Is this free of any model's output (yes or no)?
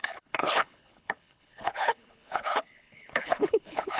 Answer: no